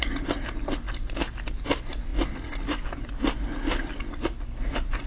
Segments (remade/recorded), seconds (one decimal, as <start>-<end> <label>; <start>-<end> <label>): 0.0-5.1 recorded